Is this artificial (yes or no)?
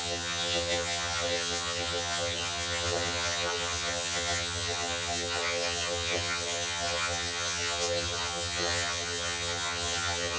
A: yes